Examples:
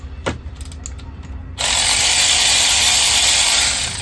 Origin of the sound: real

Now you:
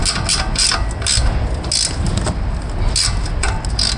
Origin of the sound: real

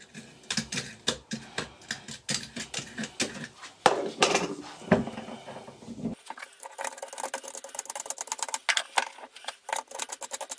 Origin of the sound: real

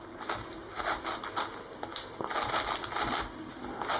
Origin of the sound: real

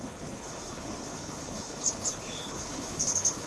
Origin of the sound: fake